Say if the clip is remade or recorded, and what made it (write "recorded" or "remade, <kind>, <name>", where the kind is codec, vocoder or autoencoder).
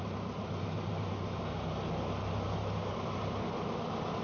recorded